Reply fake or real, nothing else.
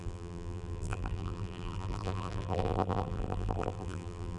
fake